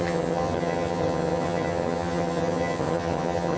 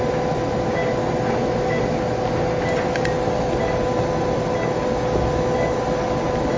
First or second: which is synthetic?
first